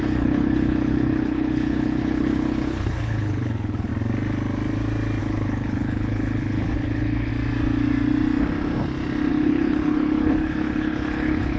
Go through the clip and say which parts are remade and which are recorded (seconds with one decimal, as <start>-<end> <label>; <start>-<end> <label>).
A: 0.0-3.9 remade; 3.9-5.2 recorded; 5.2-7.3 remade; 7.3-9.3 recorded; 9.3-11.6 remade